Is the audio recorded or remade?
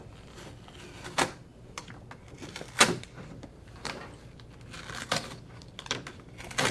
recorded